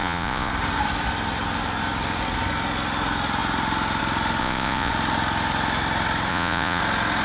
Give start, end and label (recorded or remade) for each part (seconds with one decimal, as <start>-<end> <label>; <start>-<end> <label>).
0.0-0.5 remade; 0.5-4.4 recorded; 4.4-4.9 remade; 4.9-6.3 recorded; 6.3-6.8 remade; 6.8-7.2 recorded